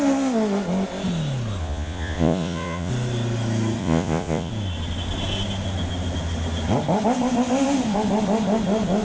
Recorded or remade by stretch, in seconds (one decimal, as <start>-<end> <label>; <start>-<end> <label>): 0.0-1.6 recorded; 1.6-2.9 remade; 2.9-3.8 recorded; 3.8-4.5 remade; 4.5-9.0 recorded